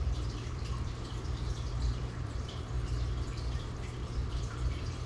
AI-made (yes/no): yes